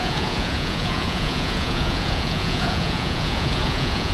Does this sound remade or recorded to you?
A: remade